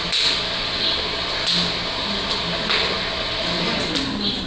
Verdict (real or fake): real